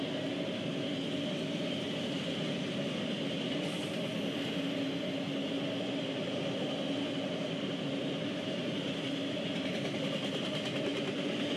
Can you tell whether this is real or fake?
real